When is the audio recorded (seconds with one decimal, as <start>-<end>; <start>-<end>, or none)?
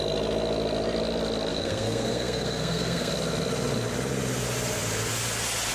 0.0-1.5; 3.1-5.7